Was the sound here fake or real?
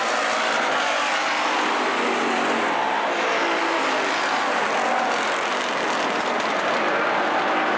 real